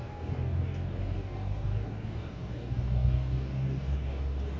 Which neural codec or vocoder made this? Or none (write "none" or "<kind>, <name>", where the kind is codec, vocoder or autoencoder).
codec, DAC